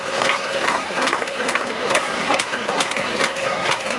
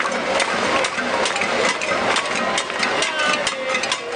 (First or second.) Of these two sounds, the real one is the second